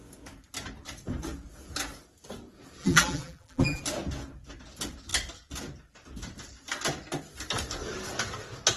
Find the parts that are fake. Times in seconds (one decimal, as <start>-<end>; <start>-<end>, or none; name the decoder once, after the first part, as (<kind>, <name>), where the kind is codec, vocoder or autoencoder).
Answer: 2.8-3.8 (vocoder, BigVGAN v2)